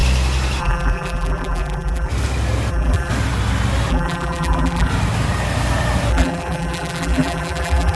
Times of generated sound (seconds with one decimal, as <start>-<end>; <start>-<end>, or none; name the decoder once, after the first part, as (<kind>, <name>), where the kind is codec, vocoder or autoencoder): 0.6-2.1 (vocoder, BigVGAN v2); 2.7-3.1; 3.9-4.9; 6.1-8.0